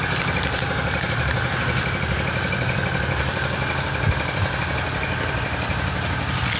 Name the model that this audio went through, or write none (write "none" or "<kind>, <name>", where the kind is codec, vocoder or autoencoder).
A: none